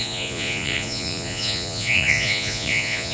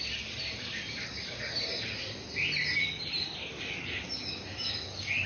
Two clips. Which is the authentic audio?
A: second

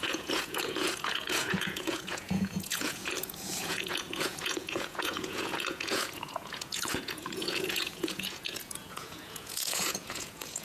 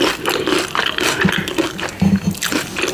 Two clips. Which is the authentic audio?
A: second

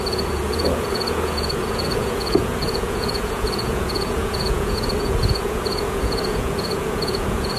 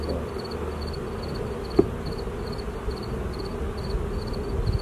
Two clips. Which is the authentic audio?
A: second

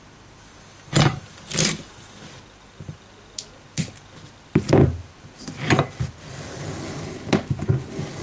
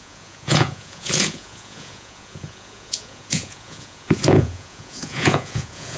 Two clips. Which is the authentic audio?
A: first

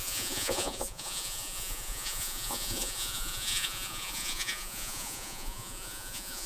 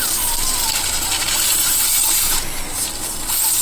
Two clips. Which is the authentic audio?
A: second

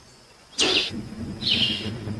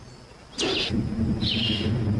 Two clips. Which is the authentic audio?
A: second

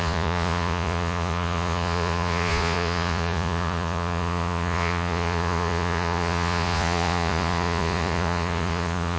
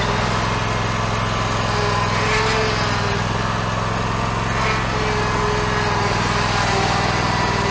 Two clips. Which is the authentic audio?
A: second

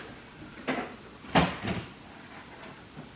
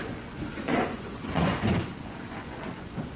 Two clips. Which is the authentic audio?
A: first